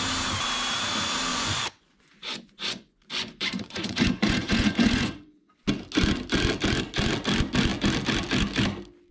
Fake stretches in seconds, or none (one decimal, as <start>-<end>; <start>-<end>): 1.3-5.5